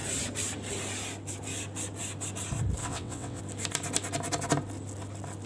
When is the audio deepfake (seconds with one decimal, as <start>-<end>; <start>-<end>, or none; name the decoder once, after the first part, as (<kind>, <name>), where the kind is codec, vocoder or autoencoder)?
2.8-3.4 (vocoder, WaveNeXt)

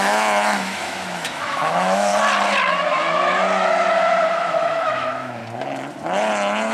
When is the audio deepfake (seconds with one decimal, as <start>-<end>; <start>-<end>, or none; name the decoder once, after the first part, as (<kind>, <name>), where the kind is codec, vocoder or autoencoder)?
0.0-2.1 (autoencoder, DAC-VAE); 4.3-5.4

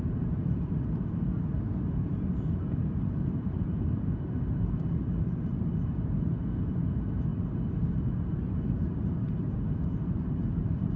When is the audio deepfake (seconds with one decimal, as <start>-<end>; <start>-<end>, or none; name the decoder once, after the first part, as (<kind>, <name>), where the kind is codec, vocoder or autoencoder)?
0.0-11.0 (vocoder, BigVGAN v2)